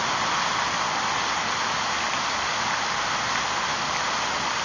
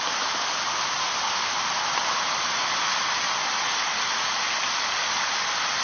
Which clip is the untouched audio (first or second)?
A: first